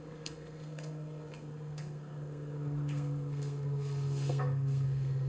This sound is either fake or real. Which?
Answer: fake